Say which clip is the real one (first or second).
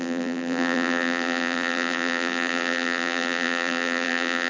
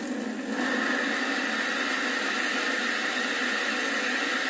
second